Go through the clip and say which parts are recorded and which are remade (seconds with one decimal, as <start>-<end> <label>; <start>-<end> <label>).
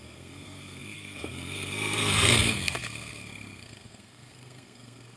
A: 0.0-5.2 remade